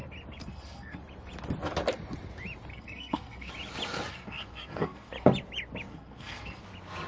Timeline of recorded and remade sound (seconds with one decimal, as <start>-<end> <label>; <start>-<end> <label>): 0.0-0.4 recorded; 0.4-1.0 remade; 1.0-2.7 recorded; 2.7-3.5 remade; 3.5-4.1 recorded; 4.1-5.1 remade; 5.1-5.9 recorded; 5.9-6.6 remade; 6.6-7.1 recorded